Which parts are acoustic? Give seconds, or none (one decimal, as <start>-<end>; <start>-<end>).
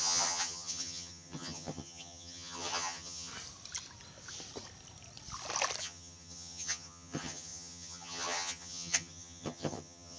3.3-5.8